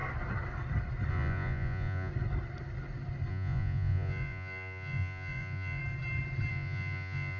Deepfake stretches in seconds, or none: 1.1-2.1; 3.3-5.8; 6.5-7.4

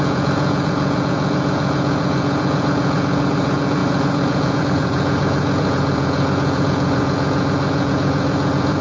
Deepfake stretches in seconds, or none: 0.0-8.8

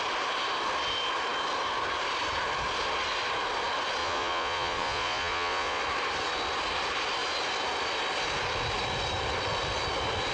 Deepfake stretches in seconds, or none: 4.0-5.8

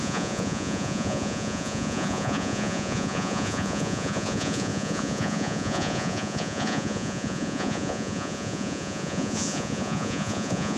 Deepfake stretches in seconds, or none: 0.0-10.8

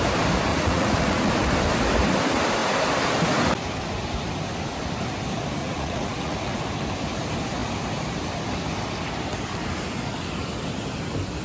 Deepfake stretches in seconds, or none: 0.5-1.3; 5.6-6.6

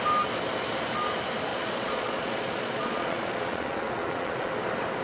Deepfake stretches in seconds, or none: 1.5-4.5

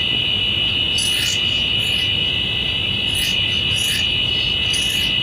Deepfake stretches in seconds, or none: none

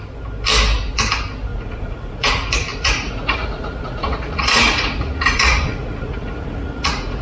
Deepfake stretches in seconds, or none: 1.5-2.3; 2.7-7.2